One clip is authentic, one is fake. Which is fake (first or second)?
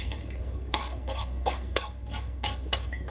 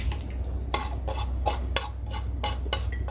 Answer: first